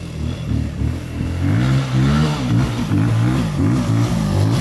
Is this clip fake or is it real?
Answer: real